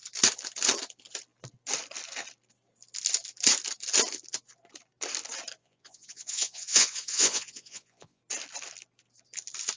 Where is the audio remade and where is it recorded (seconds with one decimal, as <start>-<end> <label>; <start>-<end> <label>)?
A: 0.0-5.6 recorded; 5.6-8.2 remade; 8.2-9.8 recorded